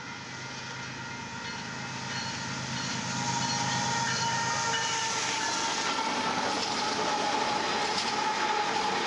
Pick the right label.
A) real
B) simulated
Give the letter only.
A